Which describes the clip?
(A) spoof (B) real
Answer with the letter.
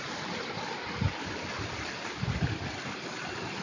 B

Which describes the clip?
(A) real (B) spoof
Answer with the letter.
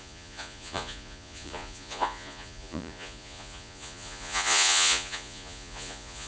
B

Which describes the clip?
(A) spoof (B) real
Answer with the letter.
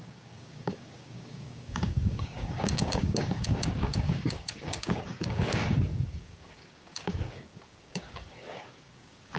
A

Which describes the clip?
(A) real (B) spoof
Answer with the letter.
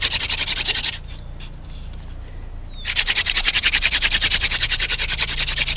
A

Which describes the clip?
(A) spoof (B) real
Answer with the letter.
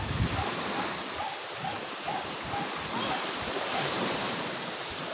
A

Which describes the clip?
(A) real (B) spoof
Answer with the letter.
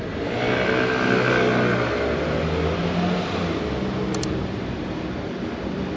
A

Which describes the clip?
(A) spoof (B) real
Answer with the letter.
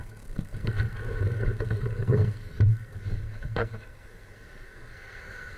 A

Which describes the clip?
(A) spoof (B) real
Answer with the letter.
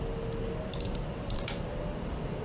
A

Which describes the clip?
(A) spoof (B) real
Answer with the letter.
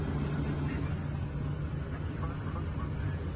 B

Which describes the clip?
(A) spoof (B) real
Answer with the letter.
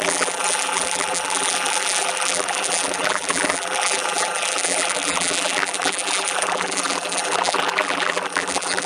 A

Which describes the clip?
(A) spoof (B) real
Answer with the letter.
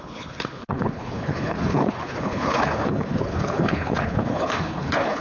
A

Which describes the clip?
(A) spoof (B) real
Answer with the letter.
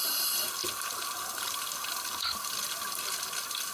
B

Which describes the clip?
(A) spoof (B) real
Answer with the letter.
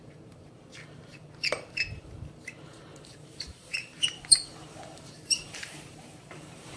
A